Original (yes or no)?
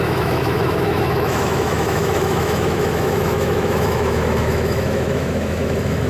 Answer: no